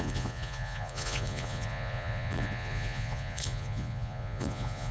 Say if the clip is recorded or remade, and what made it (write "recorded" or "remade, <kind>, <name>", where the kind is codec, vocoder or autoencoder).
remade, vocoder, Vocos